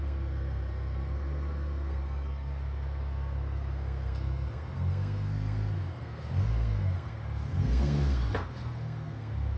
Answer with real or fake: fake